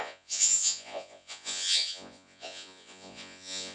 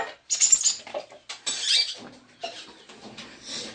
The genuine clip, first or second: second